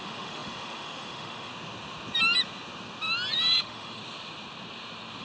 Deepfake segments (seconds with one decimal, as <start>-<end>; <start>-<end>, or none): 0.0-1.5; 3.6-4.0